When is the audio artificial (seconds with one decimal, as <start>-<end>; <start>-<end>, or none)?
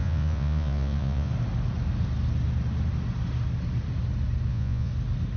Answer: 0.0-1.3; 4.5-4.9